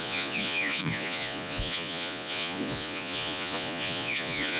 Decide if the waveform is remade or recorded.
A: remade